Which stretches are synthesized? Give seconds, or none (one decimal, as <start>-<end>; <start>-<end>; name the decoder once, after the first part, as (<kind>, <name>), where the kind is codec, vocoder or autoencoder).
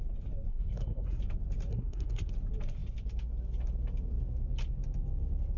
0.5-1.2 (codec, SNAC); 1.7-2.3